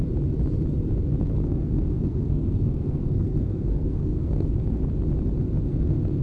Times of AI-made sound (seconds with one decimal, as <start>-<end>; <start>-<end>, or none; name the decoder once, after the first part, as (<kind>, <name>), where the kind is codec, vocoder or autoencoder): 1.2-4.9 (codec, SNAC); 5.7-6.2